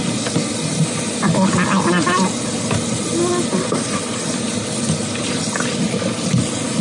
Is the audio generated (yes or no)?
no